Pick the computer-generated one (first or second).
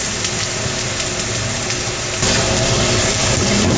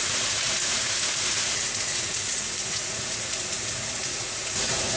second